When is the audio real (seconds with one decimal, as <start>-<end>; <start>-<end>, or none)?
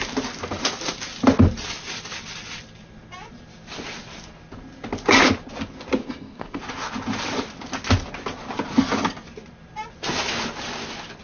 0.0-6.0; 6.6-11.2